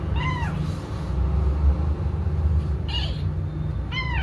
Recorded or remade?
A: recorded